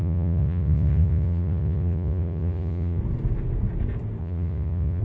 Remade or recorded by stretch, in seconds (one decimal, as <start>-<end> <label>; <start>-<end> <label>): 0.0-3.0 remade; 3.0-4.2 recorded; 4.2-5.0 remade